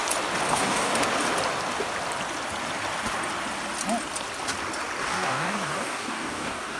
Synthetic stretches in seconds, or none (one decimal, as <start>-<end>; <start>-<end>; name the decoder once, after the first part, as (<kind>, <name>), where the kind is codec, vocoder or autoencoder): 0.5-0.9 (codec, DAC); 5.0-6.8